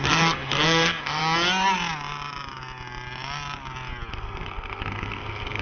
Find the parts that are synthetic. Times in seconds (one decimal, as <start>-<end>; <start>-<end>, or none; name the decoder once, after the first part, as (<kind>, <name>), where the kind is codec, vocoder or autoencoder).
0.0-1.2 (codec, SNAC); 4.1-5.6

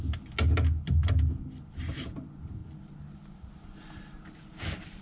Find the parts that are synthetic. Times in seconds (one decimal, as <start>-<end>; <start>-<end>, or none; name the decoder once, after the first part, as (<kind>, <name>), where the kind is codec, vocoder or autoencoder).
none

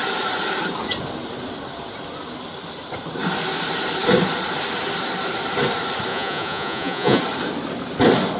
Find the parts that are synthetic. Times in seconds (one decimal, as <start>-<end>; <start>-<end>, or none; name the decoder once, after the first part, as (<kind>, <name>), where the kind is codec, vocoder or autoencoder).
6.1-7.2 (vocoder, Vocos)

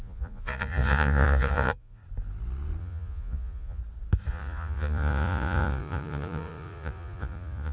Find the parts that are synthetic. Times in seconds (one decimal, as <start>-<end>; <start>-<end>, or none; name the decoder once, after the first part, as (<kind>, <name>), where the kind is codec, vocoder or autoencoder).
0.0-2.0 (vocoder, Vocos); 2.8-3.8; 4.3-7.7

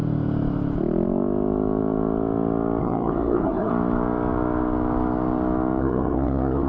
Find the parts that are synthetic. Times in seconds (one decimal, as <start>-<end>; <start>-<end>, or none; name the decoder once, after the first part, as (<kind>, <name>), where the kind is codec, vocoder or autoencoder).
2.8-3.7 (codec, SNAC); 5.8-6.7